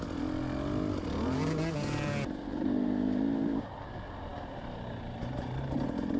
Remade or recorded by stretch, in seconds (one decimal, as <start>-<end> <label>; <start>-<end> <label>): 0.0-2.5 recorded; 2.5-3.6 remade; 3.6-6.2 recorded